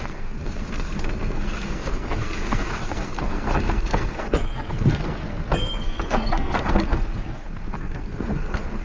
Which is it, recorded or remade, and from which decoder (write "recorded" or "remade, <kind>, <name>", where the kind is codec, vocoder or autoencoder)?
remade, codec, SNAC